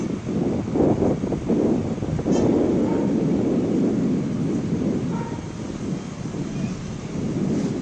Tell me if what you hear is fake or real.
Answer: real